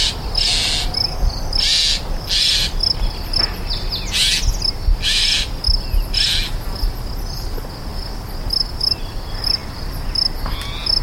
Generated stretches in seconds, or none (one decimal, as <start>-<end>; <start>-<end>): none

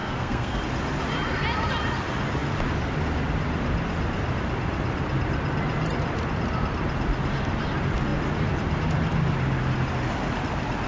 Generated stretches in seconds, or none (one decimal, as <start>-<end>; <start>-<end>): 0.0-0.6

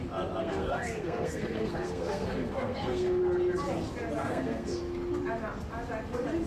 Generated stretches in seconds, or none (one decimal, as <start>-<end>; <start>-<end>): 0.4-3.2; 4.2-4.8

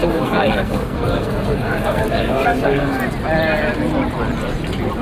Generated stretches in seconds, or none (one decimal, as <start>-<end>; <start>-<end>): 0.0-3.0

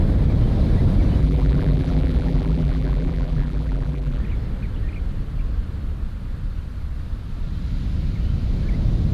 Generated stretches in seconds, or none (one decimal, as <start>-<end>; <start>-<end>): 1.2-4.2